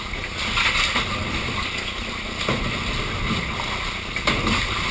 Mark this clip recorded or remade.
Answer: recorded